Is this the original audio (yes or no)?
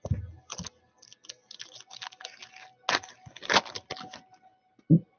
yes